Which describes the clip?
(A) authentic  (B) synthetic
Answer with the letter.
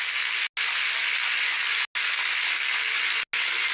A